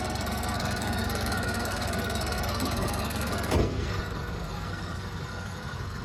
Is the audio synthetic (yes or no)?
yes